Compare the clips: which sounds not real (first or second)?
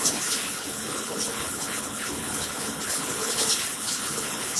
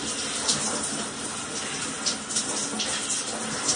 first